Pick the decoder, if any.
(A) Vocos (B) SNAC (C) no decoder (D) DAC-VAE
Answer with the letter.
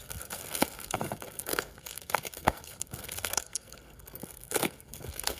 B